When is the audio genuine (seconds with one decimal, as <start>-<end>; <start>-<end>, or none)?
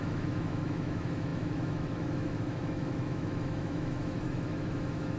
none